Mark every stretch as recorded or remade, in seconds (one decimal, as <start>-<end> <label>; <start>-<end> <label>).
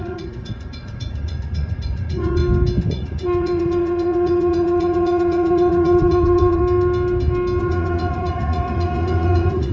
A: 0.0-2.4 remade; 2.4-2.9 recorded; 2.9-6.6 remade; 6.6-7.6 recorded; 7.6-9.7 remade